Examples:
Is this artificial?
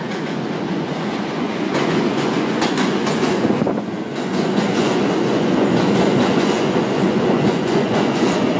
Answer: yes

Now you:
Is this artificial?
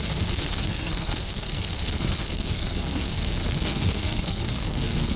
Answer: yes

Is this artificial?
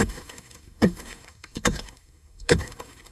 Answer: yes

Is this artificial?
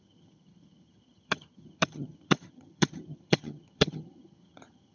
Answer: yes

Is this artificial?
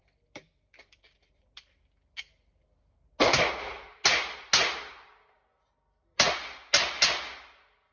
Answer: no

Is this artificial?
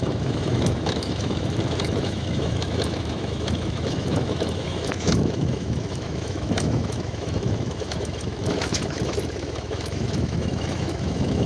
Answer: yes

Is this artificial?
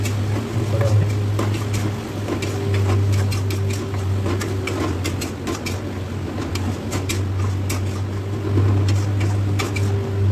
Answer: no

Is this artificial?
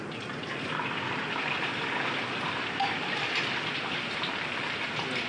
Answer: no